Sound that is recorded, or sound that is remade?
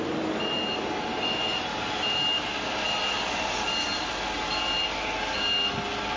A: recorded